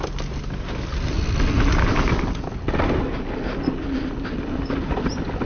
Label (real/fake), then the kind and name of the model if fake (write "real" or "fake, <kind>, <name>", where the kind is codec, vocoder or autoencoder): real